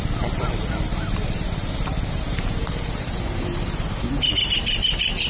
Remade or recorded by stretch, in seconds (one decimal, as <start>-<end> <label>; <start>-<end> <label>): 0.0-0.9 recorded; 0.9-4.1 remade; 4.1-5.3 recorded